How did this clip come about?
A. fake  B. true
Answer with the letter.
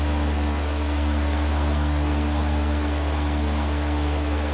A